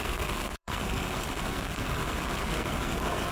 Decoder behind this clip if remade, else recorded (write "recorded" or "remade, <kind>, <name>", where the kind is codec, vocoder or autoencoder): remade, codec, SNAC